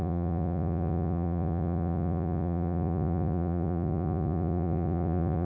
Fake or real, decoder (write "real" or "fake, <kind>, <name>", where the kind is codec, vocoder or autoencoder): fake, vocoder, Vocos